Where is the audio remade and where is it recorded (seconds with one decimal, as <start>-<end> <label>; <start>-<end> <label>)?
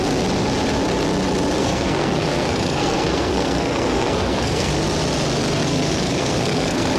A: 0.0-1.6 recorded; 1.6-4.7 remade; 4.7-5.6 recorded; 5.6-7.0 remade